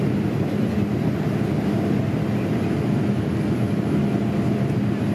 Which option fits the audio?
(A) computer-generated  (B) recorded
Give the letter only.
B